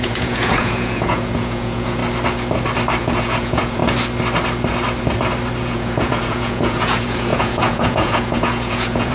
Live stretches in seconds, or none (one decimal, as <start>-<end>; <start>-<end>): 2.0-3.0; 3.8-5.6